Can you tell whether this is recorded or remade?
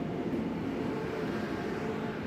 remade